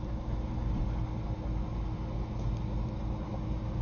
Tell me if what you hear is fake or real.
real